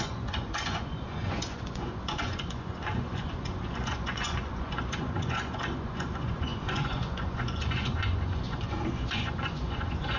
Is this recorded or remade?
remade